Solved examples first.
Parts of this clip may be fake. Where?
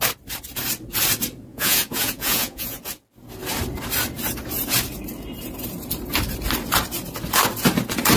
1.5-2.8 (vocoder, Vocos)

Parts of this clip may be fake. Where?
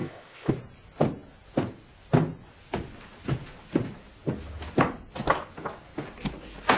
0.0-0.5 (codec, ZipCodec)